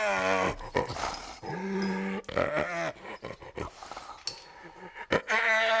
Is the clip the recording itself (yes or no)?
yes